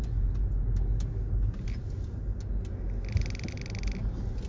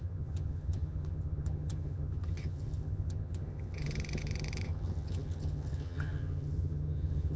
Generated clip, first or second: second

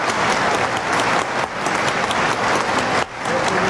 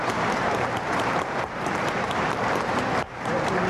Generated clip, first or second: second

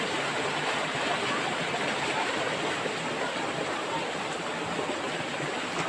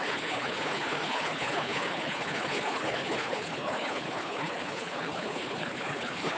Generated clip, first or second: second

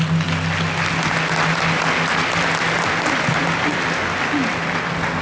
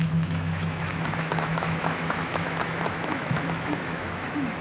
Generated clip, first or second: second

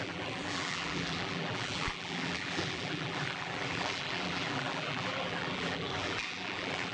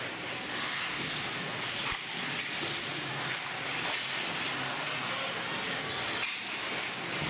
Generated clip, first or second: first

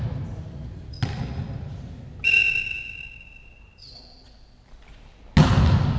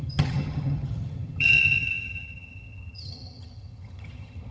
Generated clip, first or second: second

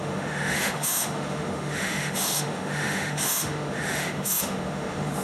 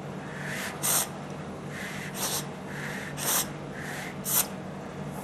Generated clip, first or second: first